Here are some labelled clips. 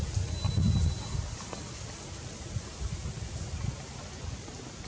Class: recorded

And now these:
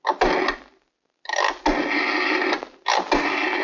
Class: recorded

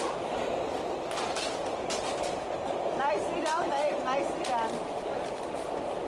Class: recorded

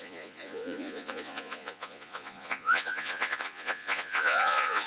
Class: remade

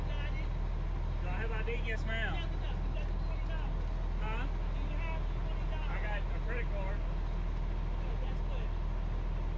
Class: recorded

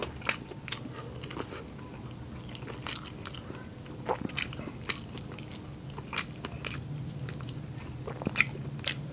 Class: recorded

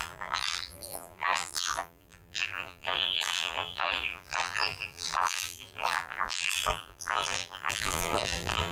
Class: remade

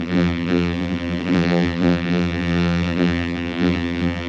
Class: remade